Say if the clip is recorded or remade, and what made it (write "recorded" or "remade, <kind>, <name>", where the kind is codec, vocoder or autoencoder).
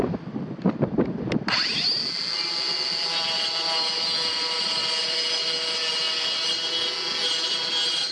recorded